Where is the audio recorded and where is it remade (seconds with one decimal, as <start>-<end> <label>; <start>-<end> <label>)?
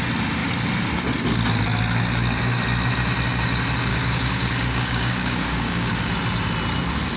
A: 0.0-3.9 recorded; 3.9-5.9 remade; 5.9-7.2 recorded